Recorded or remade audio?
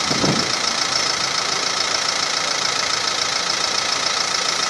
remade